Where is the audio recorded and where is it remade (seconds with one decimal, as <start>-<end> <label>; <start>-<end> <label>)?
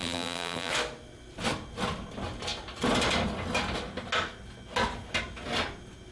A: 0.0-0.7 remade; 0.7-6.1 recorded